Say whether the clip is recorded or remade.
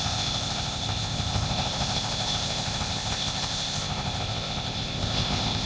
remade